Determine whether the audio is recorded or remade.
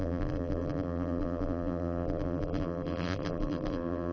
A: remade